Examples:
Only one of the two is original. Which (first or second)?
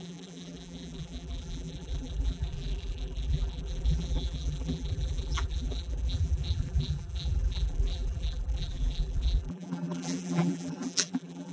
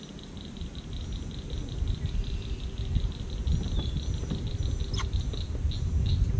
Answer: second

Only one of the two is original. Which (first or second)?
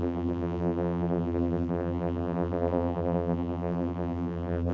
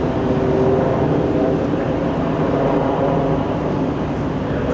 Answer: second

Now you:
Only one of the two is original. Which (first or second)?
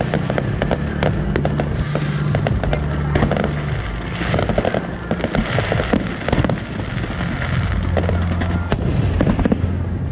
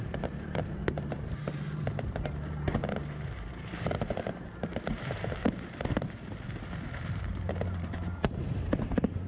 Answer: first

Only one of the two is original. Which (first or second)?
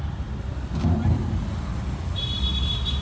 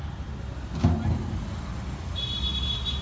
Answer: second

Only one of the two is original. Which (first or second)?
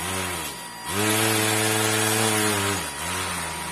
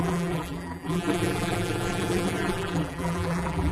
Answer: first